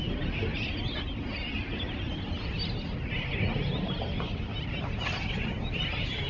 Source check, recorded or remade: recorded